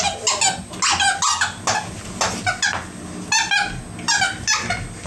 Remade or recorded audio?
recorded